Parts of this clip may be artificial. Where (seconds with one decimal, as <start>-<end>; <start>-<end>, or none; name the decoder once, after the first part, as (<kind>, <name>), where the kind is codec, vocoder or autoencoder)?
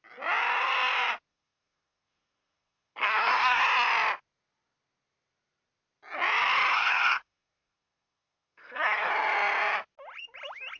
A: 1.3-3.6 (codec, SNAC); 6.7-9.1